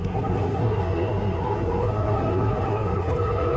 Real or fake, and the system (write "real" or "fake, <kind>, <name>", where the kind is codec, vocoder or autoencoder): fake, codec, SNAC